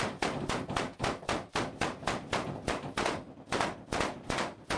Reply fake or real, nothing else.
real